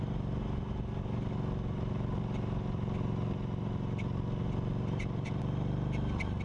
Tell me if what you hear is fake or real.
real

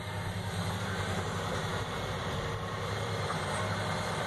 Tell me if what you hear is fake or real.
fake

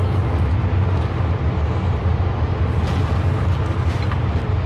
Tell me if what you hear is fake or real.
real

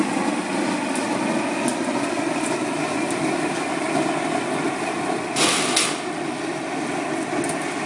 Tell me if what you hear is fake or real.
real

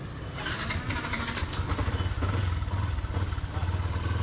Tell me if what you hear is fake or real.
real